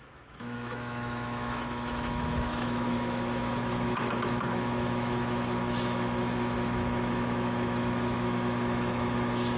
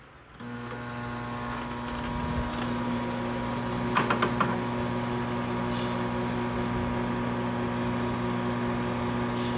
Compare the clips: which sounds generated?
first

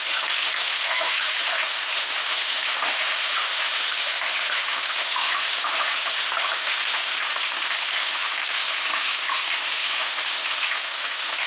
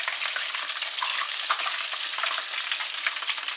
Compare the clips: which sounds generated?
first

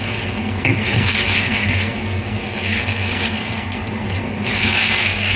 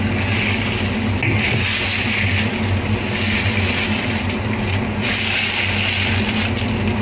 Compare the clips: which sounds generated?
first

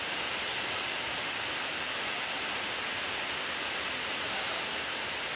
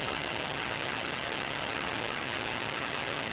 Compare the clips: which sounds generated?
second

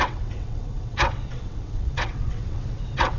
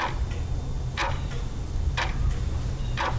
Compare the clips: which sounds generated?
first